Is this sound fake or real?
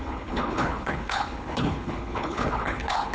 fake